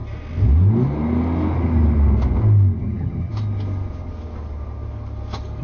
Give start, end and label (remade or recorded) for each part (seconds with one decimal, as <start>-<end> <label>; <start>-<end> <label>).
0.0-2.8 recorded; 2.8-3.3 remade; 3.3-5.6 recorded